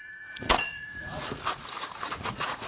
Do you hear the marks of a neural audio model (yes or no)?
yes